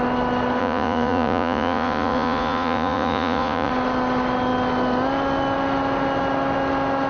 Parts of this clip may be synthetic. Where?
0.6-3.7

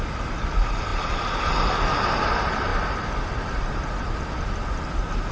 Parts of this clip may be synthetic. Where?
none

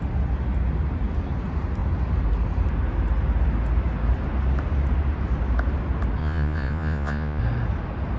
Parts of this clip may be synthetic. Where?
6.2-7.4